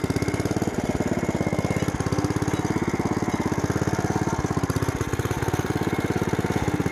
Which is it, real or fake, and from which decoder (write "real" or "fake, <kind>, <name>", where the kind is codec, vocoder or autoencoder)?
real